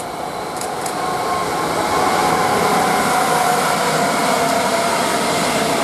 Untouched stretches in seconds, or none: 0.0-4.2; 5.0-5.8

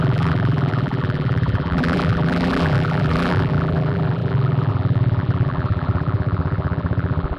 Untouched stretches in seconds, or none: none

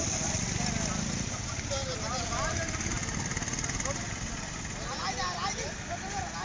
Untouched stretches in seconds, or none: 0.0-6.4

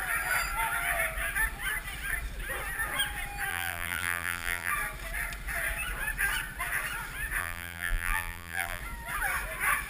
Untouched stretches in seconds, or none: 0.0-3.5; 4.7-7.4; 8.8-9.9

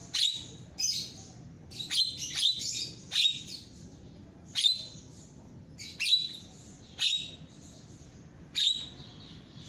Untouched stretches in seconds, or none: 0.0-9.7

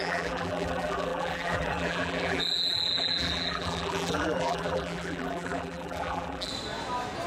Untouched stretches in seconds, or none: 6.5-7.3